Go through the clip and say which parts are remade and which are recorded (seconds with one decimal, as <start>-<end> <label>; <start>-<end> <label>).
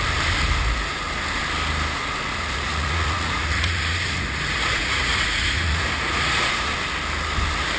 0.0-2.3 recorded; 2.3-6.7 remade; 6.7-7.8 recorded